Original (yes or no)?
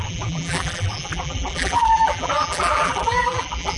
no